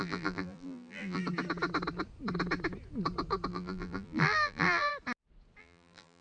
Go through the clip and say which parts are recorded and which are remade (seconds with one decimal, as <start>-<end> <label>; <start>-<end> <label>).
0.0-1.2 remade; 1.2-3.5 recorded; 3.5-4.9 remade; 4.9-5.6 recorded; 5.6-6.2 remade